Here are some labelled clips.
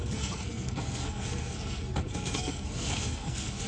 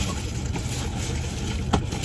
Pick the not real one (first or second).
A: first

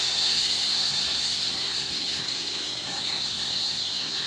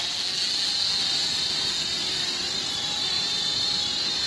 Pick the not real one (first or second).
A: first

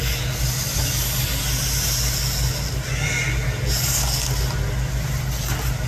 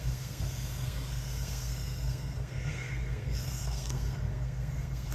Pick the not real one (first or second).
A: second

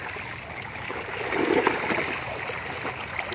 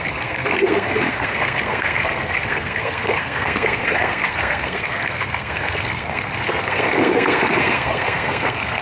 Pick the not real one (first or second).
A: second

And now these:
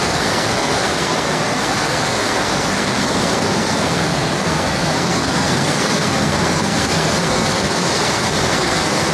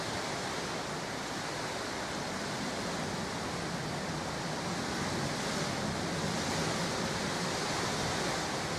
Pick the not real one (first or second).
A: first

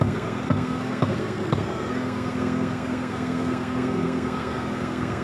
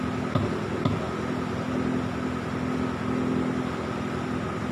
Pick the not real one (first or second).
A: first